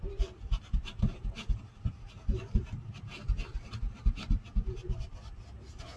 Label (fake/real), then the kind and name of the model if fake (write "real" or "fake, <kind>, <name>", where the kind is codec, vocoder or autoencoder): fake, vocoder, BigVGAN v2